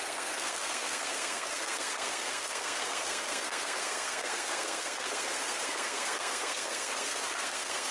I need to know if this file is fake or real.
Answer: fake